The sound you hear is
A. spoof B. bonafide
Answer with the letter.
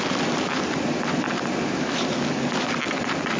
B